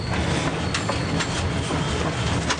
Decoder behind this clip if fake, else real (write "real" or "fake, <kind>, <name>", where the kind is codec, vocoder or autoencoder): real